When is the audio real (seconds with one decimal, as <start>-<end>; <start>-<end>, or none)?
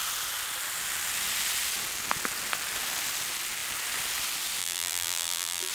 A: 0.0-4.6